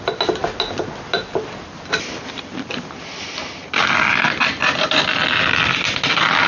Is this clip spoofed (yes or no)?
no